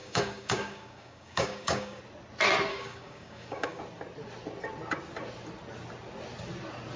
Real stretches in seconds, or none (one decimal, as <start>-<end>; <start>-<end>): 2.0-2.7; 3.8-7.0